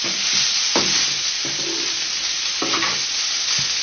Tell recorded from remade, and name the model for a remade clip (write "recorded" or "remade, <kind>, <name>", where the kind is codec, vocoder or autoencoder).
recorded